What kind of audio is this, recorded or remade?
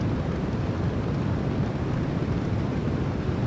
remade